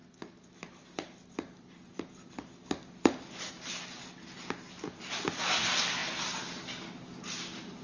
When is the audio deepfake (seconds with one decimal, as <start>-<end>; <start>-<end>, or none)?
none